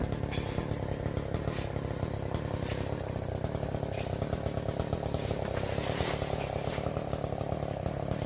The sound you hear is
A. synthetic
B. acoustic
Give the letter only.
B